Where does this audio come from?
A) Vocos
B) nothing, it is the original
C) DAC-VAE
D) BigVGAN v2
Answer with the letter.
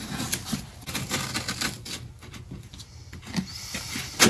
B